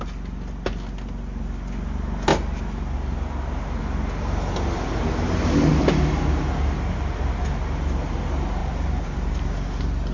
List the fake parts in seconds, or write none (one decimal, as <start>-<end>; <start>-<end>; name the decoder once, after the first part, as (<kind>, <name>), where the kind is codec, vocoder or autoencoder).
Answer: 8.6-9.4 (vocoder, BigVGAN v2)